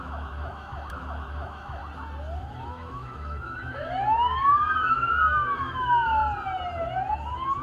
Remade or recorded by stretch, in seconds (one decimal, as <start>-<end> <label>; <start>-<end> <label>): 0.0-1.8 remade; 1.8-2.4 recorded; 2.4-6.2 remade; 6.2-7.6 recorded